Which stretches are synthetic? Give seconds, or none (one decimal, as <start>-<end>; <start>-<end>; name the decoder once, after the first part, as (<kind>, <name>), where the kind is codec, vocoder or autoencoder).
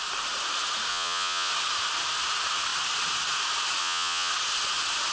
0.9-1.5 (vocoder, Vocos); 3.8-4.3